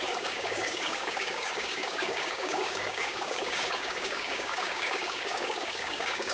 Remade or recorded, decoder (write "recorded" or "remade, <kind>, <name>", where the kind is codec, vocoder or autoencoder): remade, codec, DAC